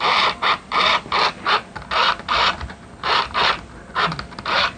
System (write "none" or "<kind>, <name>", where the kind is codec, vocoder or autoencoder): none